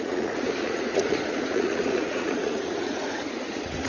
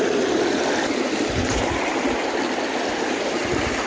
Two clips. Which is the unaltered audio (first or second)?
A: second